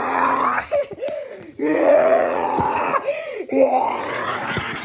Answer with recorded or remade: remade